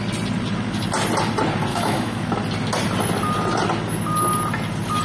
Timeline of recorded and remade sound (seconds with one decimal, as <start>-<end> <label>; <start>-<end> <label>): 0.0-1.7 recorded; 1.7-2.3 remade; 2.3-5.0 recorded